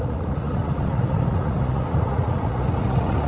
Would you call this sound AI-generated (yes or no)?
yes